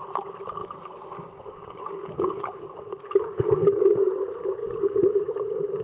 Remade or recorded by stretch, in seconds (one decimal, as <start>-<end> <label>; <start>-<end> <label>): 0.0-0.6 recorded; 0.6-4.1 remade; 4.1-4.6 recorded; 4.6-5.2 remade; 5.2-5.8 recorded